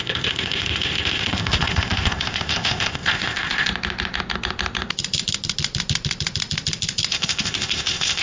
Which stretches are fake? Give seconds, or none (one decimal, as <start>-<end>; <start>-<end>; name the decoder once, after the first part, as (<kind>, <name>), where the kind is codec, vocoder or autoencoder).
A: 0.0-3.7 (codec, ZipCodec); 7.1-8.2